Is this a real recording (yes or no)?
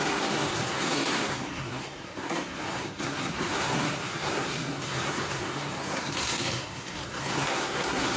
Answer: no